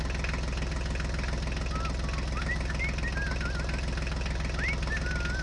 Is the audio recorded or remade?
recorded